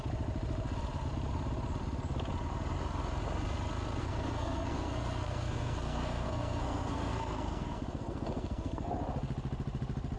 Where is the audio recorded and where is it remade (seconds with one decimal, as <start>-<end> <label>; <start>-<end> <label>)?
0.0-4.0 recorded; 4.0-8.9 remade; 8.9-10.2 recorded